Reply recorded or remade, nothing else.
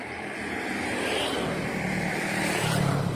remade